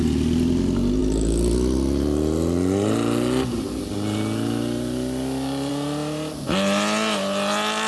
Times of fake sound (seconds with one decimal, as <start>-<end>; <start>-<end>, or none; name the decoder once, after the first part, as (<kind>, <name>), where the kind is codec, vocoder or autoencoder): none